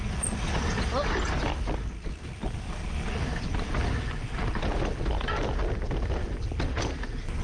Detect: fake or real real